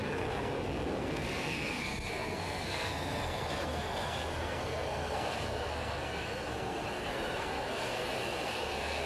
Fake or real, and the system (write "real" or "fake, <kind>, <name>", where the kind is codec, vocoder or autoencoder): fake, codec, SNAC